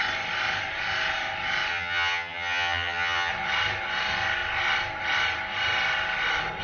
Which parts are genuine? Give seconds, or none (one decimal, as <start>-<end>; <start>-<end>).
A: 0.0-1.7; 3.3-6.6